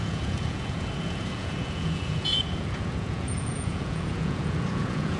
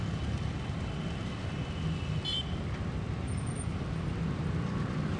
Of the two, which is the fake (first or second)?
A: first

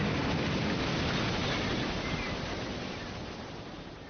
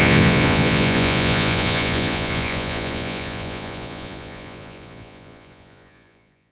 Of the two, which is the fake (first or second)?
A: second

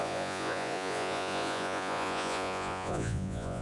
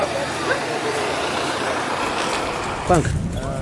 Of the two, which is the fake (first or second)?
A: first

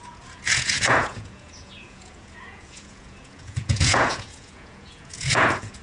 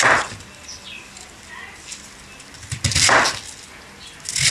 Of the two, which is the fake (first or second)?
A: first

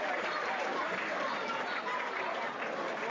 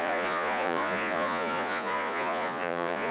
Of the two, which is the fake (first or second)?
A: second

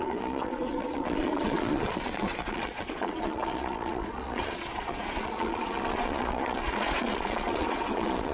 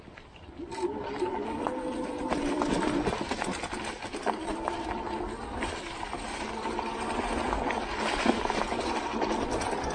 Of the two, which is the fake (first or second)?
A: first